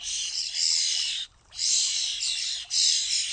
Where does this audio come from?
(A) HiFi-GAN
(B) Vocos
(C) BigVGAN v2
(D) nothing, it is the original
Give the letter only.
D